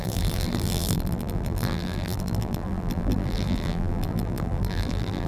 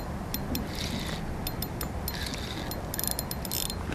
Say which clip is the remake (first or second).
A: first